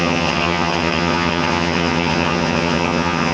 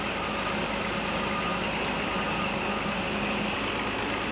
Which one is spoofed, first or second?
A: first